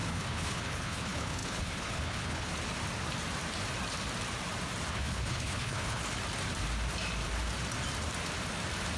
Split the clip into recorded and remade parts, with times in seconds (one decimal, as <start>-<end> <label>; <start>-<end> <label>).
0.0-2.5 remade; 2.5-4.9 recorded; 4.9-6.0 remade; 6.0-9.0 recorded